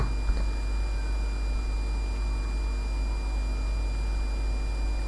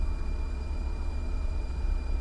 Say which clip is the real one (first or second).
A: first